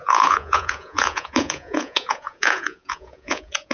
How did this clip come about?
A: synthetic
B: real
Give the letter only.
A